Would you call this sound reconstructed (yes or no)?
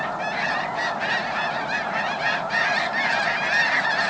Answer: no